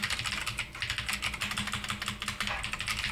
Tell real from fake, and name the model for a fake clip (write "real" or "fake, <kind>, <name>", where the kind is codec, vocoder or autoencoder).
real